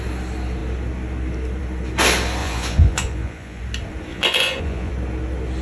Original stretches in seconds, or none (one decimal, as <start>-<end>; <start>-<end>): 0.0-2.4; 3.6-4.1; 4.9-5.6